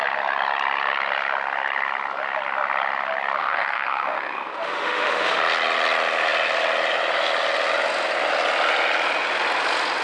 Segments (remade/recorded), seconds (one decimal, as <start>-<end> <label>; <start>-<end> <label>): 0.0-3.4 recorded; 3.4-5.4 remade; 5.4-10.0 recorded